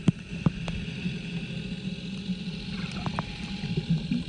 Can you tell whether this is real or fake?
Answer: real